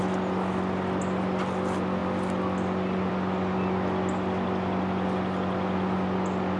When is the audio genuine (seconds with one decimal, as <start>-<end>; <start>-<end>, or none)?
0.0-6.6